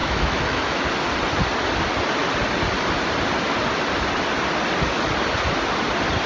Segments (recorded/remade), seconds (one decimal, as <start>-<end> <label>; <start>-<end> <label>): 0.0-0.8 remade; 0.8-6.3 recorded